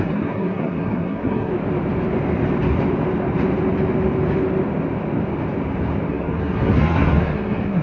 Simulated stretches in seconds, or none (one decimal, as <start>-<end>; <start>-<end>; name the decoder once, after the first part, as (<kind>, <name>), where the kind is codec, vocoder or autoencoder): 0.0-1.5 (codec, SNAC); 6.1-7.8